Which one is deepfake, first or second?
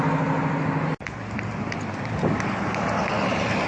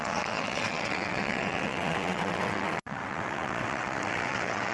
second